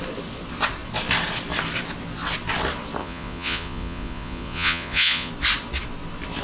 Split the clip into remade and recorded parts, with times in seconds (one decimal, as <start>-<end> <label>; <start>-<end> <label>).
0.0-3.0 recorded; 3.0-5.3 remade; 5.3-6.4 recorded

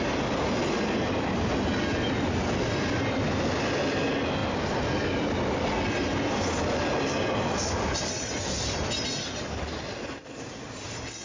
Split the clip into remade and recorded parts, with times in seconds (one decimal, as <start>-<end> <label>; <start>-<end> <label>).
0.0-11.2 recorded

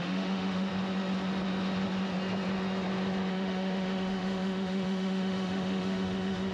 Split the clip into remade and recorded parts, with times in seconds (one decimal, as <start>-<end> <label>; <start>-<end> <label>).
0.0-0.7 remade; 0.7-3.3 recorded; 3.3-6.5 remade

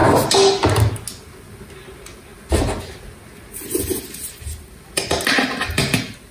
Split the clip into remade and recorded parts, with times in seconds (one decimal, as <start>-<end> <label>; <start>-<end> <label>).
0.0-6.3 recorded

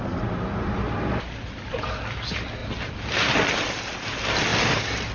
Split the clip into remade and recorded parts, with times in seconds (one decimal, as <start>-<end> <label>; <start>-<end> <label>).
0.0-2.6 recorded; 2.6-3.5 remade; 3.5-4.5 recorded; 4.5-5.1 remade

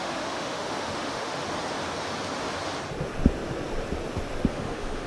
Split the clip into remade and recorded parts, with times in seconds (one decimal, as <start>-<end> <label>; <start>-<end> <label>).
0.0-1.4 remade; 1.4-4.5 recorded; 4.5-5.1 remade